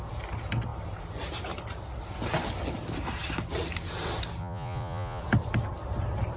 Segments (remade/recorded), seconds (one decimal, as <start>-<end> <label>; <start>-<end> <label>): 0.0-4.4 recorded; 4.4-5.2 remade; 5.2-6.4 recorded